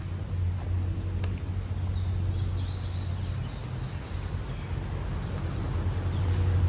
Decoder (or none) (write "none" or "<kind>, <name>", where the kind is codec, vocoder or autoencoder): none